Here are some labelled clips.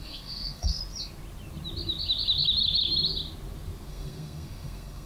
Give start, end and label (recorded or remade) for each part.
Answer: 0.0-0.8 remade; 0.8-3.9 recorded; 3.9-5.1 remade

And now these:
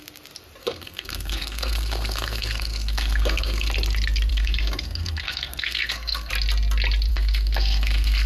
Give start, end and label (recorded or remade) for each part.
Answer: 0.0-0.6 recorded; 0.6-3.7 remade; 3.7-4.3 recorded; 4.3-6.3 remade; 6.3-7.1 recorded; 7.1-8.3 remade